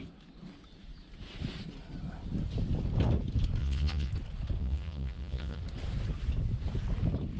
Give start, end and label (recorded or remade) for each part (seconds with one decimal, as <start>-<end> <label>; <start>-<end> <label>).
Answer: 0.0-3.6 recorded; 3.6-4.1 remade; 4.1-4.6 recorded; 4.6-5.6 remade; 5.6-7.4 recorded